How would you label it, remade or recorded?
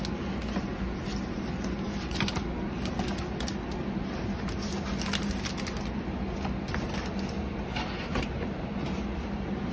recorded